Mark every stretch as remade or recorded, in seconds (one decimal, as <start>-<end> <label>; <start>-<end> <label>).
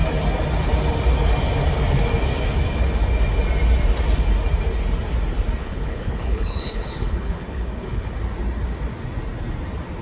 0.0-5.6 recorded; 5.6-8.2 remade; 8.2-10.0 recorded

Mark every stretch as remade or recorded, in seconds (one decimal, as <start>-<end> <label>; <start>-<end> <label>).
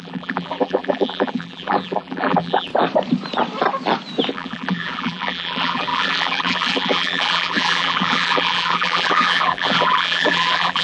0.0-2.7 remade; 2.7-4.3 recorded; 4.3-10.8 remade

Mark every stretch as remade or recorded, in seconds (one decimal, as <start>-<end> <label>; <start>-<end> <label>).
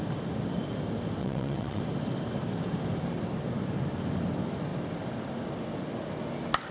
0.0-1.2 recorded; 1.2-1.8 remade; 1.8-6.7 recorded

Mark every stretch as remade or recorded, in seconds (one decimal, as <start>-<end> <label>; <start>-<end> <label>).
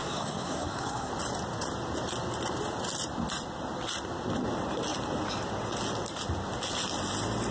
0.0-1.1 remade; 1.1-7.5 recorded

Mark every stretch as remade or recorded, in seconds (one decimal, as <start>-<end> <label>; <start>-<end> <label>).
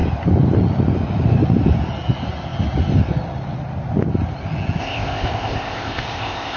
0.0-4.8 recorded; 4.8-6.6 remade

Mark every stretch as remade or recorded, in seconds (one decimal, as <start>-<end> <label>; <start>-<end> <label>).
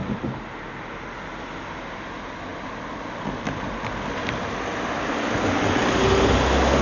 0.0-6.8 recorded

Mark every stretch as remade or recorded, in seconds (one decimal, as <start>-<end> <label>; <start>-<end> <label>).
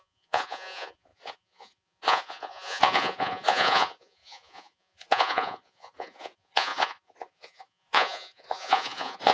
0.0-9.3 remade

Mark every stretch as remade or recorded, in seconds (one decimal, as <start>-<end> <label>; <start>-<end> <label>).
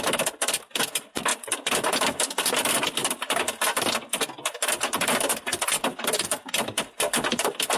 0.0-7.8 recorded